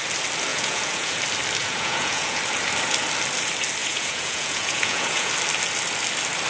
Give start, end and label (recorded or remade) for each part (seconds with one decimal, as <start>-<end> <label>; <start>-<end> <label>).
0.0-0.5 recorded; 0.5-1.2 remade; 1.2-1.6 recorded; 1.6-2.4 remade; 2.4-3.8 recorded; 3.8-5.3 remade; 5.3-6.5 recorded